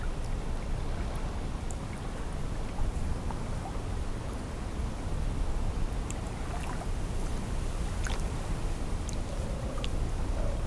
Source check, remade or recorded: recorded